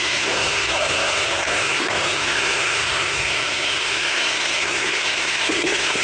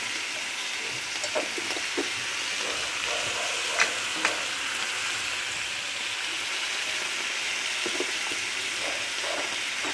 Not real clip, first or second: first